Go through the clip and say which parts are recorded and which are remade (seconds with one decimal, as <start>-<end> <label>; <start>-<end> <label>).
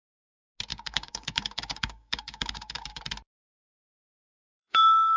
0.0-0.7 recorded; 0.7-3.0 remade; 3.0-4.3 recorded; 4.3-5.2 remade